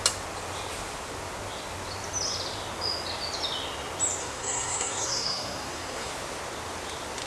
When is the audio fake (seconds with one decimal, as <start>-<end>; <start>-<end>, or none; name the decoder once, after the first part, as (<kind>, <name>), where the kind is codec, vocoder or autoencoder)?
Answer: 4.2-6.1 (codec, SNAC)